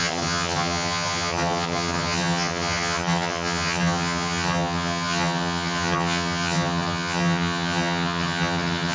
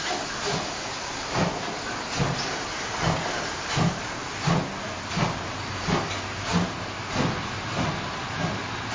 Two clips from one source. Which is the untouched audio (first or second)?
second